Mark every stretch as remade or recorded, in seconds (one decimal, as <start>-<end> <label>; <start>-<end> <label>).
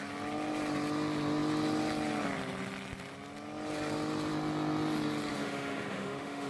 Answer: 0.0-5.3 recorded; 5.3-6.5 remade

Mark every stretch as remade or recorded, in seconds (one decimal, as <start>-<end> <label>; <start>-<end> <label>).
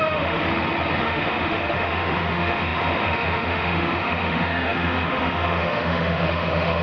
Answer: 0.0-0.5 remade; 0.5-1.0 recorded; 1.0-6.8 remade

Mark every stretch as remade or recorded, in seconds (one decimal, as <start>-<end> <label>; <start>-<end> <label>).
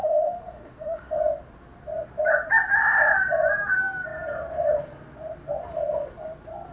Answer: 0.0-1.2 remade; 1.2-6.7 recorded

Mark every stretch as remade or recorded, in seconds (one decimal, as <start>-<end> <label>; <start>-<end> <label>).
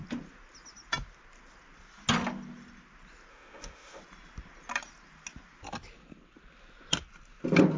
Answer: 0.0-3.3 recorded; 3.3-4.0 remade; 4.0-7.8 recorded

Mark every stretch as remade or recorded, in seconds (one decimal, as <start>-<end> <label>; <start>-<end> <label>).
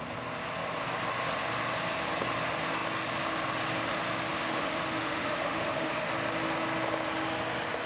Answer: 0.0-4.3 recorded; 4.3-6.1 remade; 6.1-7.9 recorded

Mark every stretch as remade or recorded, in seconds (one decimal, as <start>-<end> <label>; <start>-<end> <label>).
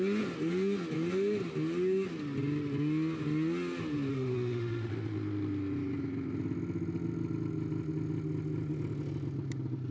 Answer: 0.0-4.1 recorded; 4.1-4.9 remade; 4.9-9.9 recorded